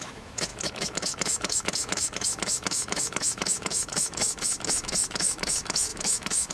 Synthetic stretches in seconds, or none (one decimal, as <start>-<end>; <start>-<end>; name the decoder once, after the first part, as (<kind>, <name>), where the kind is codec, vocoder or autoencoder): 0.0-6.5 (autoencoder, DAC-VAE)